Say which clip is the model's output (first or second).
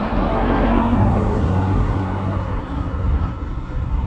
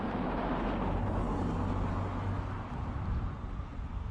first